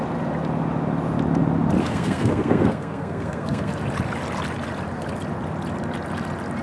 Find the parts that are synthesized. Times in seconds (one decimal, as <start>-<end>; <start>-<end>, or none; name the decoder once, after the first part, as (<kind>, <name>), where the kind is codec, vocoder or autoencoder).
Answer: 1.8-3.7 (codec, SNAC)